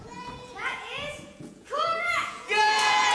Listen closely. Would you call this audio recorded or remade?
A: remade